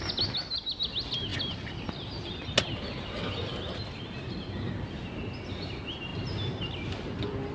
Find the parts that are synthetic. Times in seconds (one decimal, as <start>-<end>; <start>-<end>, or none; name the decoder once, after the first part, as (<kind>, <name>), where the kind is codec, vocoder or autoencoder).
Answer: none